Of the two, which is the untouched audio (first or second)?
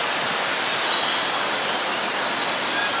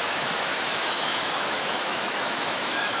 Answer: first